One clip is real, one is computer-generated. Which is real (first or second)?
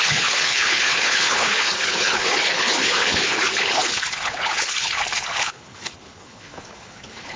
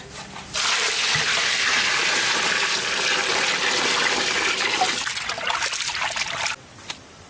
second